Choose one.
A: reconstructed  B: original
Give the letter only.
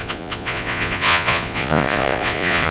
A